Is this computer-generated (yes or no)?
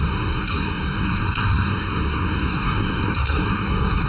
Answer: yes